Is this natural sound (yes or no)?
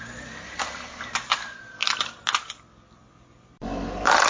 yes